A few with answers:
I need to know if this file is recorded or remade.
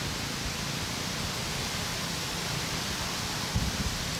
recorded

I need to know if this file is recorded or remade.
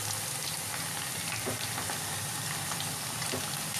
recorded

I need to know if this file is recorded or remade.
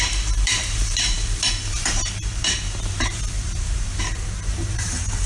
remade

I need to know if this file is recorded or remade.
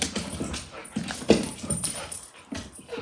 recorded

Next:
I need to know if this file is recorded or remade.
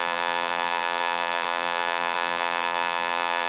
remade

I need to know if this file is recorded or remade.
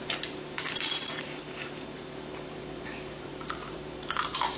remade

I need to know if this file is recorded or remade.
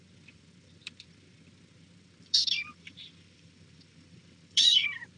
remade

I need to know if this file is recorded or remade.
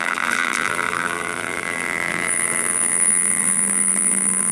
remade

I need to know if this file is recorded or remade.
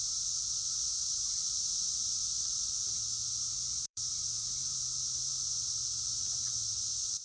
remade